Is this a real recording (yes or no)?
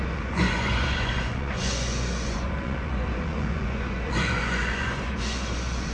no